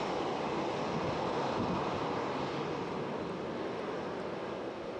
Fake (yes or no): no